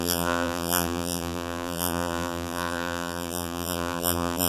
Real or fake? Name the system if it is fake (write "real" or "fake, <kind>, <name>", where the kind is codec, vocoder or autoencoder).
fake, vocoder, BigVGAN v2